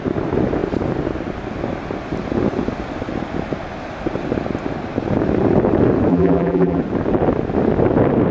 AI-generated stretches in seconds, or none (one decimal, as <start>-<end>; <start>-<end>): 6.1-6.8